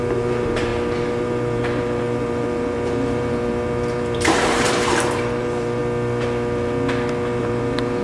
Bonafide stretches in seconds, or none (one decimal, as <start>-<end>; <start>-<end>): 5.8-7.4